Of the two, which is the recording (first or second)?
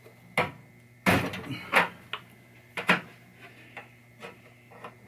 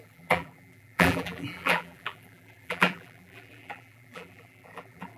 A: first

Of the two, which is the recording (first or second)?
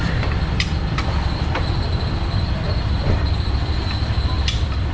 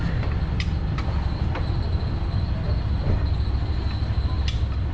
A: second